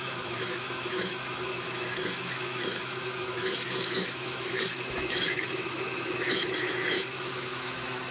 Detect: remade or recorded remade